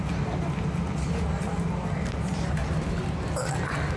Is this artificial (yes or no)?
no